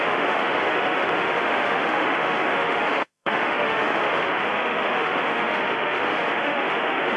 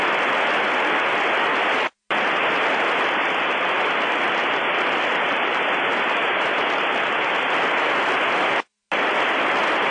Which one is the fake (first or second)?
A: first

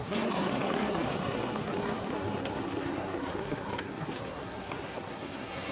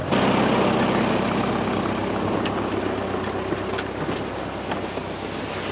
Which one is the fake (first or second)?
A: first